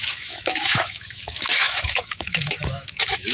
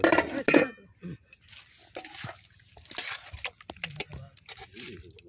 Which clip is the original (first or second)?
second